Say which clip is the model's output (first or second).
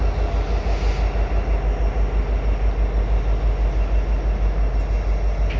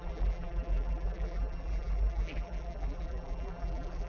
second